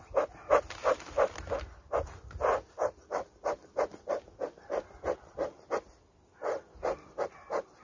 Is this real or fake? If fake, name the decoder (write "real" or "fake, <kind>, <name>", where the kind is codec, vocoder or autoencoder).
real